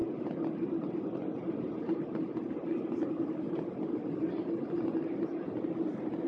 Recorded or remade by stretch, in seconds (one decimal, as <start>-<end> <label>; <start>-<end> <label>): 0.0-6.3 recorded